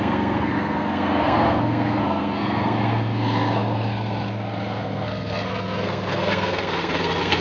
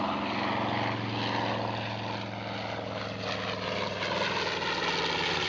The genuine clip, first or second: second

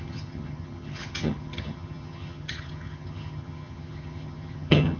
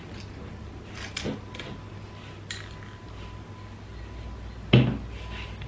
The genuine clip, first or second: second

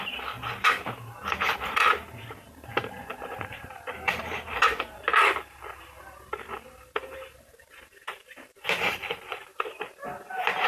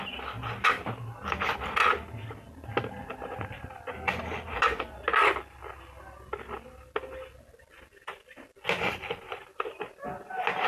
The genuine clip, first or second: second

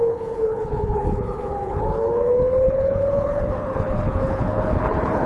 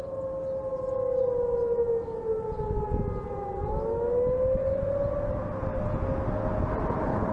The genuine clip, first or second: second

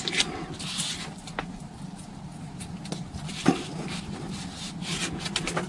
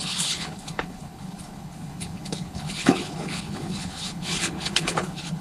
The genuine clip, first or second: first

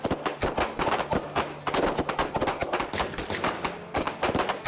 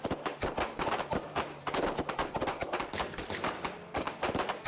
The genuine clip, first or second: first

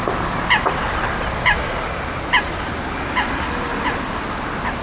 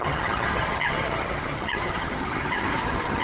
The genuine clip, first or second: first